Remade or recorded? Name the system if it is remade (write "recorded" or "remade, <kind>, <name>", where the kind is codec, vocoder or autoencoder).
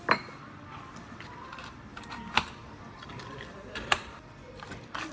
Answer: remade, vocoder, BigVGAN v2